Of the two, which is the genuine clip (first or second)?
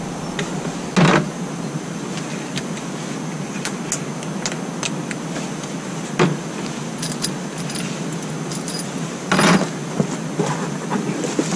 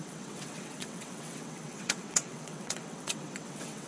first